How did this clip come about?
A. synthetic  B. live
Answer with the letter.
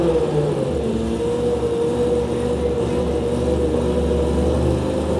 B